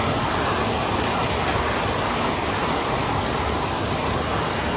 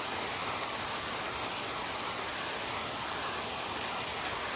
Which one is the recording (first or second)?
first